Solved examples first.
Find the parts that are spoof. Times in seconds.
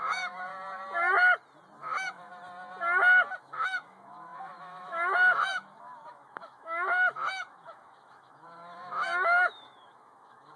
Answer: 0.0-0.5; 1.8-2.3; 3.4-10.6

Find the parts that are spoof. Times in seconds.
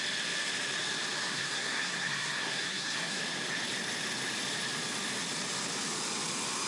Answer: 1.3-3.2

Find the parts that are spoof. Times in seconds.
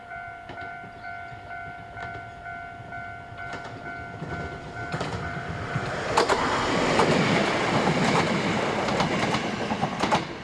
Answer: 0.0-2.0; 4.3-7.0